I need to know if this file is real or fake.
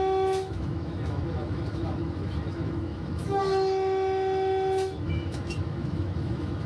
fake